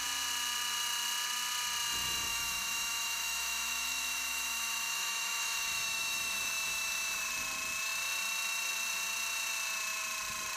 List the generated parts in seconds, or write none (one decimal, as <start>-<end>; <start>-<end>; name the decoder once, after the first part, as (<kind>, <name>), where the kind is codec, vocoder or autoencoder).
2.3-7.3 (autoencoder, DAC-VAE)